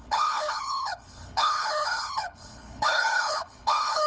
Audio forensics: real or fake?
fake